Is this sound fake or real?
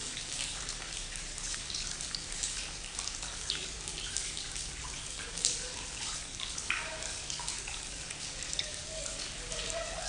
fake